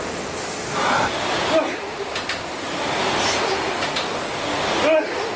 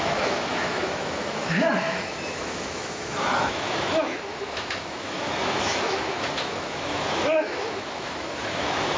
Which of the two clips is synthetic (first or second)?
second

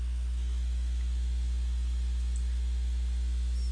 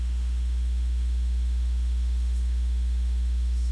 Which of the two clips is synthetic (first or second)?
second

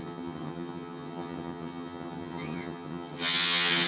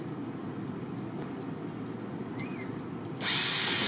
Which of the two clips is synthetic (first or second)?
first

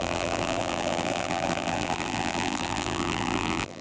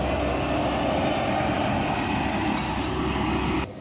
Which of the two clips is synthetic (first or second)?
first